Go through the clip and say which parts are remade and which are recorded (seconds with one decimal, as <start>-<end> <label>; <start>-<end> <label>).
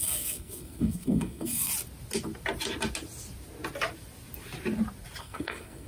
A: 0.0-1.7 remade; 1.7-5.2 recorded; 5.2-5.9 remade